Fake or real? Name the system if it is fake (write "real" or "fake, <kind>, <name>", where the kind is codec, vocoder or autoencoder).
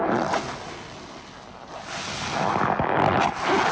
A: real